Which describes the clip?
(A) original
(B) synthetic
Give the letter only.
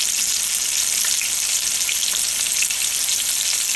A